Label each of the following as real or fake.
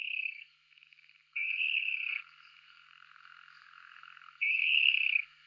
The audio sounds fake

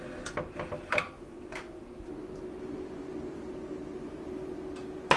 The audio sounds real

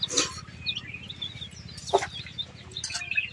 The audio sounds real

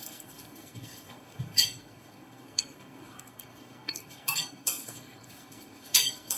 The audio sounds fake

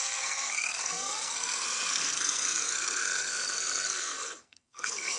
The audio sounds fake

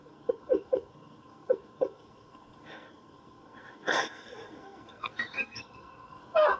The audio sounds fake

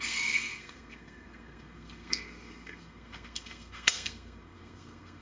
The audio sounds fake